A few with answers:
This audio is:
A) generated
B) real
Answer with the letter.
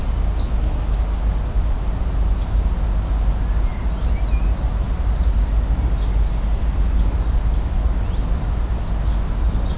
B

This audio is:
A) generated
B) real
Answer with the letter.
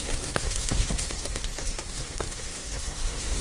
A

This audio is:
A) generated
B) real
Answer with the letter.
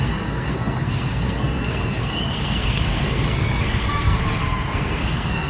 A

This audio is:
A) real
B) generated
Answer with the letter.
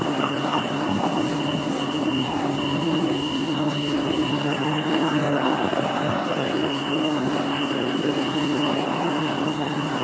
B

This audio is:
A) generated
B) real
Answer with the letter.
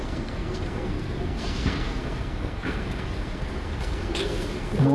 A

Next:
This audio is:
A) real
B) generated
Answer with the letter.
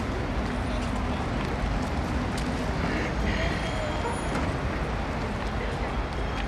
A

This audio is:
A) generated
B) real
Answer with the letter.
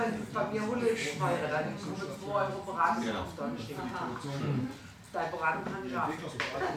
B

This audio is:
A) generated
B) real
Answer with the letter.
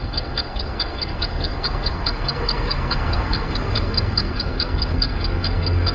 A